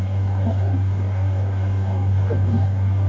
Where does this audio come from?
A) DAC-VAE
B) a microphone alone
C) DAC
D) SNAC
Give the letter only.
C